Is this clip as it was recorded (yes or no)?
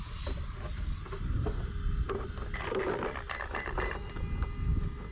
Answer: yes